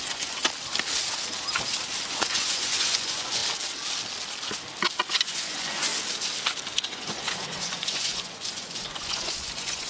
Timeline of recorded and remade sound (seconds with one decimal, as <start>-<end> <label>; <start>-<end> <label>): 0.0-0.4 remade; 0.4-1.9 recorded; 1.9-3.4 remade; 3.4-5.1 recorded; 5.1-5.9 remade; 5.9-6.9 recorded; 6.9-9.9 remade